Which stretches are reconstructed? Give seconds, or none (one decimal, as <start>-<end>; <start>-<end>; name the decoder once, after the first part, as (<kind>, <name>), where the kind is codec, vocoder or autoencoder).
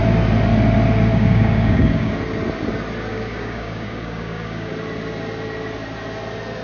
1.1-2.1 (codec, DAC); 3.1-4.7